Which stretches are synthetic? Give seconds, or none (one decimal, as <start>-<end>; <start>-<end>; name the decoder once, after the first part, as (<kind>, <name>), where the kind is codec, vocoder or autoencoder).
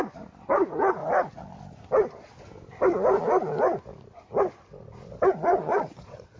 5.5-6.4 (vocoder, Vocos)